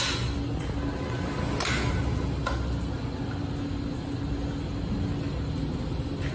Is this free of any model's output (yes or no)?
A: yes